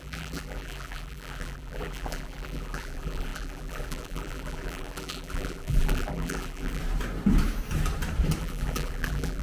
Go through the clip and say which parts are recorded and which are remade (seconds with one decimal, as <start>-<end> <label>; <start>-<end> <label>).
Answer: 0.0-6.8 remade; 6.8-8.4 recorded; 8.4-9.4 remade

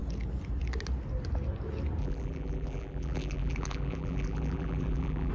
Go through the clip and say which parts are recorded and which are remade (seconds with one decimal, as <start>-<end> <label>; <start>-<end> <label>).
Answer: 0.0-2.0 recorded; 2.0-5.3 remade

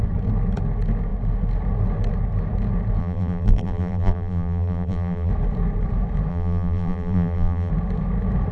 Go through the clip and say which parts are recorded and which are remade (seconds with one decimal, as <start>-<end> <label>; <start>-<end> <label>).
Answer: 0.0-3.0 recorded; 3.0-5.3 remade; 5.3-6.3 recorded; 6.3-7.7 remade; 7.7-8.5 recorded

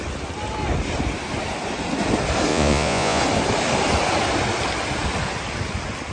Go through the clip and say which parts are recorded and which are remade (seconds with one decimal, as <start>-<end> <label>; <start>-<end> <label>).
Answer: 0.0-2.5 recorded; 2.5-3.2 remade; 3.2-6.1 recorded

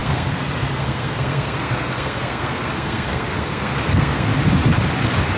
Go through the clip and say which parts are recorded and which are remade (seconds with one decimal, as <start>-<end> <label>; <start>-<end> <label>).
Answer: 0.0-4.3 remade; 4.3-5.4 recorded

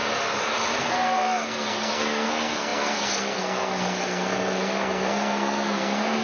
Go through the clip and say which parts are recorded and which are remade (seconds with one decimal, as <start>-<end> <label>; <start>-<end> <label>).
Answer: 0.0-0.8 recorded; 0.8-6.2 remade

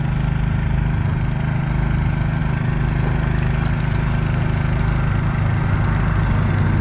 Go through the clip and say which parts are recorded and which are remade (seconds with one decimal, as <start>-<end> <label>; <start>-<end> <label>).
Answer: 0.0-6.8 recorded